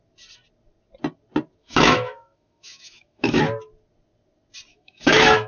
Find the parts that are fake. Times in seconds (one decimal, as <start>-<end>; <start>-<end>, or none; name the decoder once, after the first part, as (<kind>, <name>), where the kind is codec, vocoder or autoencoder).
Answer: 1.6-3.4 (autoencoder, DAC-VAE); 4.7-5.5